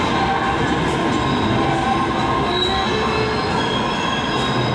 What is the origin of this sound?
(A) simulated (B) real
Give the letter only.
B